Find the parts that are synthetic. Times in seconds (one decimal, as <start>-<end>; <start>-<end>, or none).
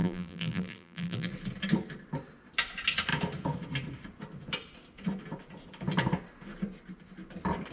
0.0-1.3